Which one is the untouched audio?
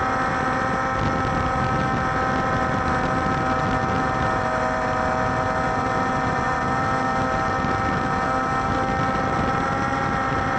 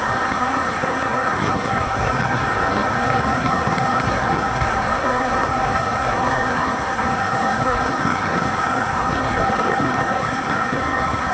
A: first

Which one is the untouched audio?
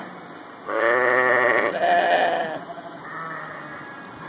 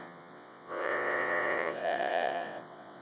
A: first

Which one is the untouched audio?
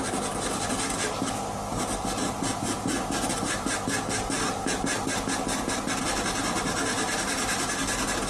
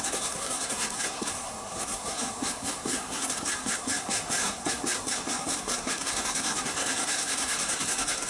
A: first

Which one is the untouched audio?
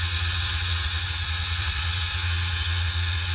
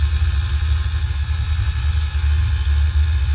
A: second